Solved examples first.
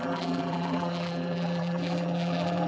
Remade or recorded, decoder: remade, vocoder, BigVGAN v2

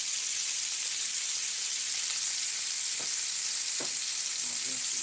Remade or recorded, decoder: remade, vocoder, BigVGAN v2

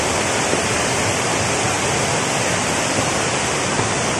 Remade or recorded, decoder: recorded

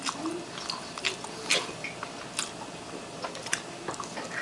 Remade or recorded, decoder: remade, vocoder, BigVGAN v2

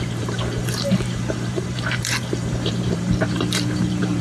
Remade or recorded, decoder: remade, vocoder, BigVGAN v2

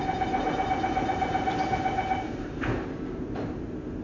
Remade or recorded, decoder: recorded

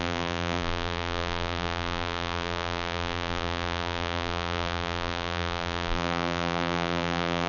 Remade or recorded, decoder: remade, vocoder, BigVGAN v2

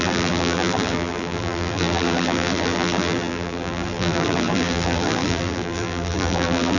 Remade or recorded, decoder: remade, vocoder, BigVGAN v2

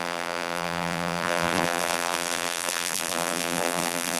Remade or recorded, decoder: remade, vocoder, BigVGAN v2